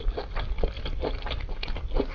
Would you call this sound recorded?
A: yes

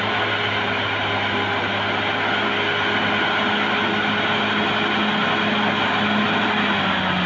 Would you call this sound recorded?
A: yes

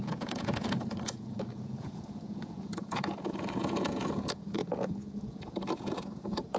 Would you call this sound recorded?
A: no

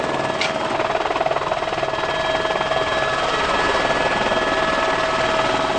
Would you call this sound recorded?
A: yes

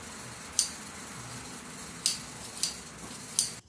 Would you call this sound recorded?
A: yes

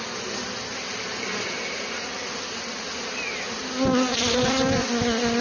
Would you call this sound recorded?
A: yes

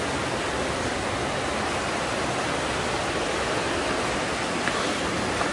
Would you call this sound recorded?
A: yes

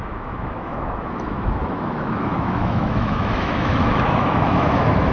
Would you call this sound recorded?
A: no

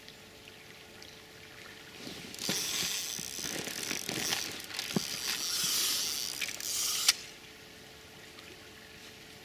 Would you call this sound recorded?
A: yes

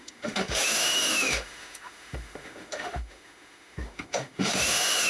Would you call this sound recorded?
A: no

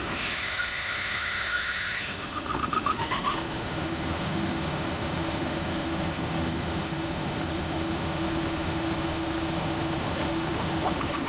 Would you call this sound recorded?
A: no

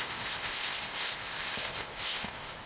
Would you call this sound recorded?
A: no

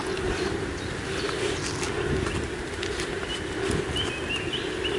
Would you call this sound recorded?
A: yes